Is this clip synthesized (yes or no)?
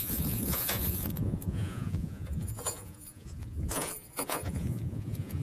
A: yes